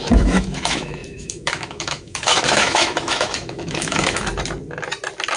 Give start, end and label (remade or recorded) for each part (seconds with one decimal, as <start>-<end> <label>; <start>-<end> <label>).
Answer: 0.0-4.3 remade; 4.3-5.4 recorded